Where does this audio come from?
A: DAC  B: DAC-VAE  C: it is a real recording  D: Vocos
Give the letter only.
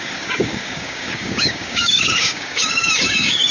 A